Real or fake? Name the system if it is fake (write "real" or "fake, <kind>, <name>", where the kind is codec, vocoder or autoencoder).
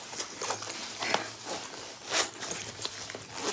real